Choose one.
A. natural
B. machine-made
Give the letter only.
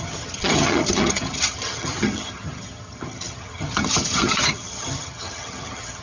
B